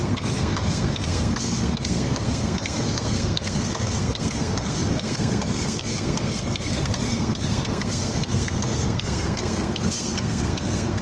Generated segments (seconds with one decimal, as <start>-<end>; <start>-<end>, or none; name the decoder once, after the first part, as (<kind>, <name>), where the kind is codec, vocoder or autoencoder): 0.0-11.0 (codec, SNAC)